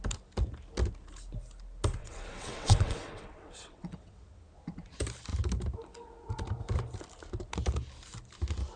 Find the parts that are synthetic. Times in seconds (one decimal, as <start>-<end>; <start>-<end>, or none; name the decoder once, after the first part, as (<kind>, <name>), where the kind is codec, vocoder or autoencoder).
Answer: 2.0-4.4 (vocoder, WaveNeXt)